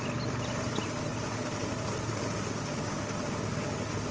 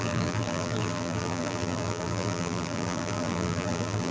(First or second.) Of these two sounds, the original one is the first